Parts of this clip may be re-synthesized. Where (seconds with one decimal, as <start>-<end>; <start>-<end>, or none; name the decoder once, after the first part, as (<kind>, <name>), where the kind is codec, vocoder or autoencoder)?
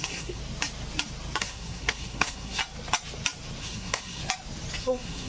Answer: 0.0-0.4 (codec, SNAC); 1.4-2.6; 3.6-4.2; 4.8-5.3